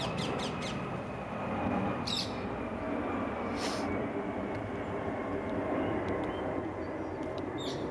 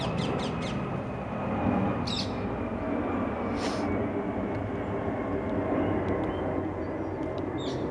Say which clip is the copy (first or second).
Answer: first